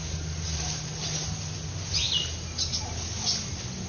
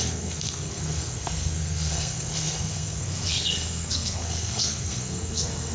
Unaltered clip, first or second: first